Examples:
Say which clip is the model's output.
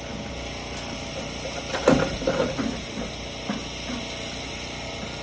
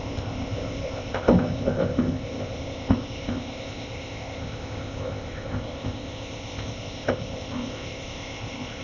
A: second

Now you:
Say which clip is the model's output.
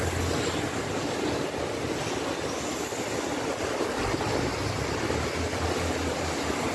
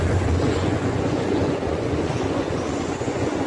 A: second